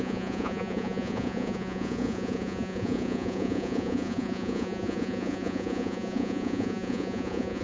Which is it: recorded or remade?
remade